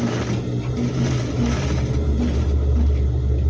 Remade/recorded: recorded